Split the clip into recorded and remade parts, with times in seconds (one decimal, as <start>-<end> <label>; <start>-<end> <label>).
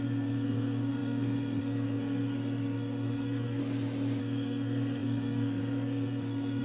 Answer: 0.0-3.6 remade; 3.6-4.2 recorded; 4.2-6.6 remade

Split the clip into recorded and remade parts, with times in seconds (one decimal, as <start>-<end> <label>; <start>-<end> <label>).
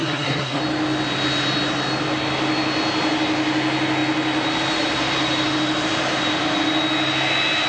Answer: 0.0-0.6 remade; 0.6-7.7 recorded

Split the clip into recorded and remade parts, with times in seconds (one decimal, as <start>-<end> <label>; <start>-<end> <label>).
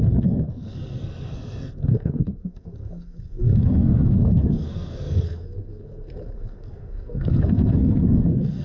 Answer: 0.0-8.6 remade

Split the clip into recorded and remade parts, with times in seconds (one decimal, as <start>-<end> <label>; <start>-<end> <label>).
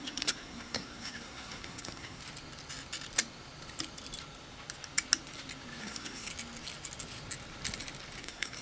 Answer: 0.0-2.2 remade; 2.2-5.8 recorded; 5.8-6.3 remade; 6.3-8.2 recorded; 8.2-8.6 remade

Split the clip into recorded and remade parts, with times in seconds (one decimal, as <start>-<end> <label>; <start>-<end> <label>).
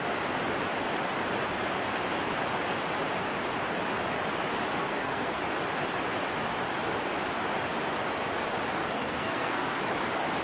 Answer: 0.0-4.8 recorded; 4.8-5.4 remade; 5.4-8.8 recorded; 8.8-9.8 remade; 9.8-10.4 recorded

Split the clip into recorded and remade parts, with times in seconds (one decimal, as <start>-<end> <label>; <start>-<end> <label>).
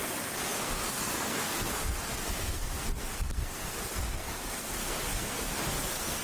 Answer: 0.0-6.2 remade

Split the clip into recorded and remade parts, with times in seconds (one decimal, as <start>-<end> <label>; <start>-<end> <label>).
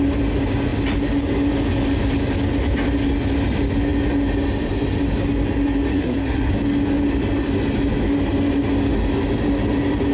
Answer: 0.0-5.9 recorded; 5.9-6.5 remade; 6.5-10.1 recorded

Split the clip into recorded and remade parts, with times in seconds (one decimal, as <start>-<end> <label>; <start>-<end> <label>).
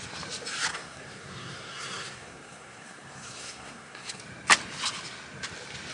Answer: 0.0-0.7 recorded; 0.7-4.2 remade; 4.2-5.9 recorded